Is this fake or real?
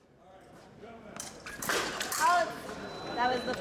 fake